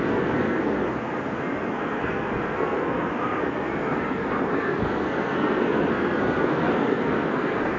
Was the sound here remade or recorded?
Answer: remade